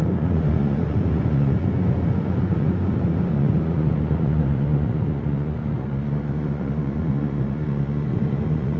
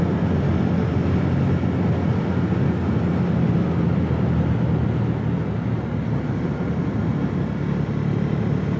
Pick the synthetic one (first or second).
first